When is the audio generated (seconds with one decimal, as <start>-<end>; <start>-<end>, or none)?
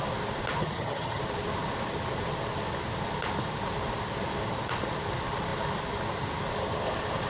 0.6-1.2